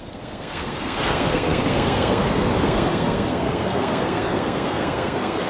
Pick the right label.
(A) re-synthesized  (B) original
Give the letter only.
A